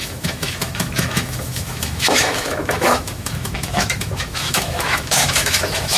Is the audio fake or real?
fake